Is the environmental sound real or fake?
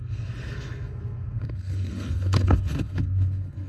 fake